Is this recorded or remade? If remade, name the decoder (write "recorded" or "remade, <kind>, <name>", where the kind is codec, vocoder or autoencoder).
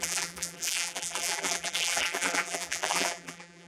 remade, vocoder, BigVGAN v2